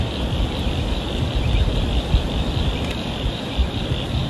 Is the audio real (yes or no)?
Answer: yes